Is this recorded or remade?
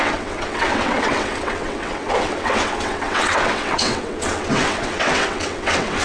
remade